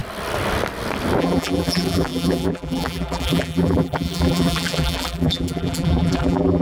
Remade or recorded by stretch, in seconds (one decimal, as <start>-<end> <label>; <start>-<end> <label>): 0.0-1.2 recorded; 1.2-6.6 remade